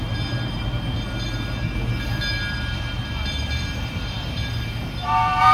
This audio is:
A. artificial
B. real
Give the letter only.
A